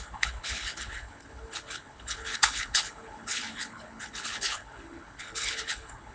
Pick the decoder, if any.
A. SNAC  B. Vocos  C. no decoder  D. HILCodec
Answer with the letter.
D